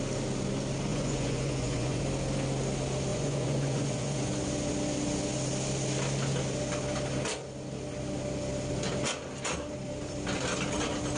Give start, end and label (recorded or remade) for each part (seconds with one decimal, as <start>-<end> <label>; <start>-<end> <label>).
0.0-0.9 recorded; 0.9-2.0 remade; 2.0-3.1 recorded; 3.1-4.3 remade; 4.3-11.2 recorded